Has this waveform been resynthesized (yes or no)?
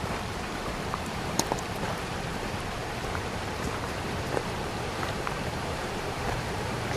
yes